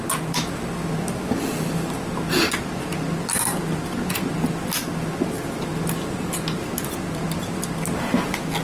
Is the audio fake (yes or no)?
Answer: no